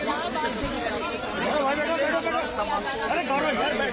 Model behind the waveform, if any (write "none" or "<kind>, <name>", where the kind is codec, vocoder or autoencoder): none